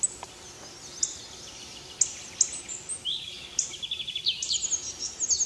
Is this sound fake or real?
real